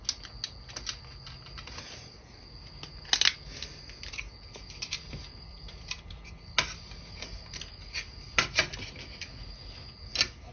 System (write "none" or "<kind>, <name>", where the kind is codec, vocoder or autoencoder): none